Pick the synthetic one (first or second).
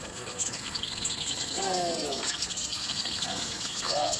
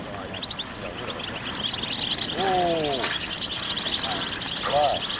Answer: first